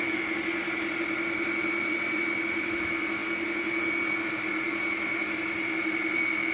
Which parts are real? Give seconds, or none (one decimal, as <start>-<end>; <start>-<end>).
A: 0.0-6.5